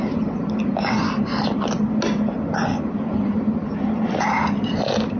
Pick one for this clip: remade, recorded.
recorded